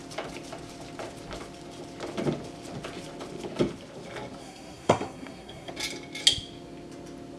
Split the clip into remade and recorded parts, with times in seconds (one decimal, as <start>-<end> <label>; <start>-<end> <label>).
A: 0.0-4.4 recorded; 4.4-5.7 remade; 5.7-7.4 recorded